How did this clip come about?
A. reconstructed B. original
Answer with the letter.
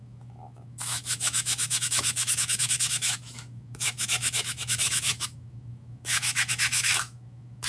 A